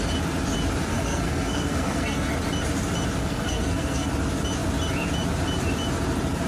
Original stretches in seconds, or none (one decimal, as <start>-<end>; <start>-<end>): 0.0-0.9; 2.3-3.2; 4.1-6.5